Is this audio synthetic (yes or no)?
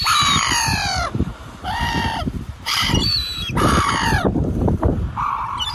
yes